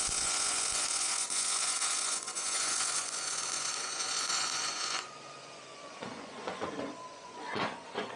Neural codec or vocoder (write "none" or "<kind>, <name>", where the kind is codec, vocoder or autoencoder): vocoder, Vocos